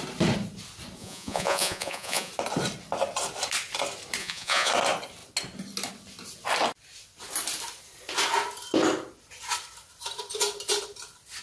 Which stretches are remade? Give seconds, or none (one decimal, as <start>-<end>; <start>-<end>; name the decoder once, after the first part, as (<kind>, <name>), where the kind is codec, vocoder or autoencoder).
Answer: 1.0-2.3 (vocoder, Vocos); 4.2-4.7